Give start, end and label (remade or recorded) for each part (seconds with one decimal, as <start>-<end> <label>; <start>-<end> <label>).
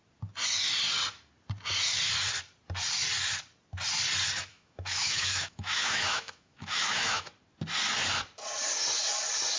0.0-4.5 recorded; 4.5-7.3 remade; 7.3-9.6 recorded